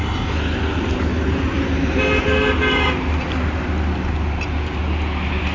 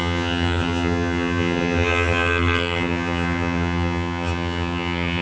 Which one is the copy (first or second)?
second